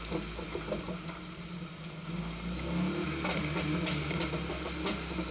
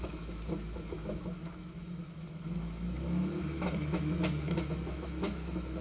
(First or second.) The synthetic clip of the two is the second